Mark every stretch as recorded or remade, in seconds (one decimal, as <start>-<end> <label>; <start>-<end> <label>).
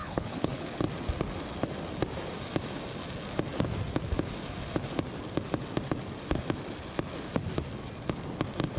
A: 0.0-0.8 remade; 0.8-8.8 recorded